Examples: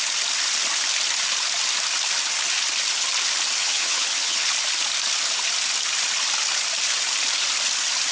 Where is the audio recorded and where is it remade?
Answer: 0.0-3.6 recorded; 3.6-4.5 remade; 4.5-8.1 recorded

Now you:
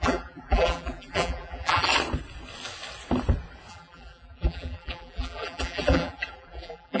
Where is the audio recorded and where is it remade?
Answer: 0.0-1.9 remade; 1.9-3.7 recorded; 3.7-7.0 remade

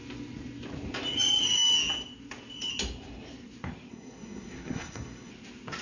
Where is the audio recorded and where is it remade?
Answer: 0.0-3.9 recorded; 3.9-5.3 remade; 5.3-5.8 recorded

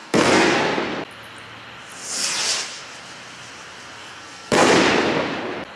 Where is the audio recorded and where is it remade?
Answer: 0.0-0.6 remade; 0.6-4.0 recorded; 4.0-4.7 remade; 4.7-5.8 recorded

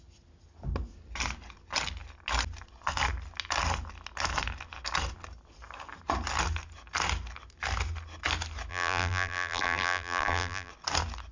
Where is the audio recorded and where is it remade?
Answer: 0.0-8.7 recorded; 8.7-10.7 remade; 10.7-11.3 recorded

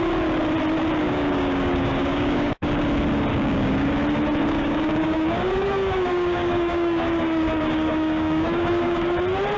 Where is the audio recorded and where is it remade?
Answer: 0.0-1.0 recorded; 1.0-2.8 remade; 2.8-3.3 recorded; 3.3-3.9 remade; 3.9-4.4 recorded; 4.4-9.1 remade; 9.1-9.6 recorded